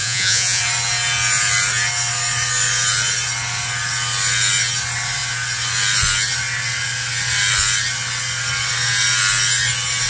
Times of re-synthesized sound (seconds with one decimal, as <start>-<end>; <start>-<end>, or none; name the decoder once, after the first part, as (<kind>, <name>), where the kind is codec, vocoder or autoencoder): 0.0-0.6 (vocoder, Vocos)